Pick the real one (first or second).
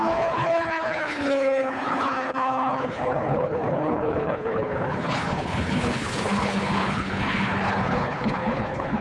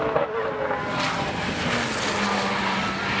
second